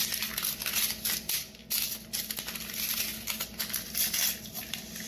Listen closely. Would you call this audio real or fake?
real